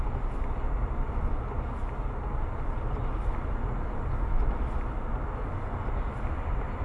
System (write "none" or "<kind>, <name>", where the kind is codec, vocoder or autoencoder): none